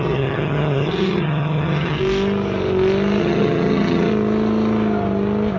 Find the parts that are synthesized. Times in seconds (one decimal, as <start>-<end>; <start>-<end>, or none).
0.0-2.0; 3.2-4.1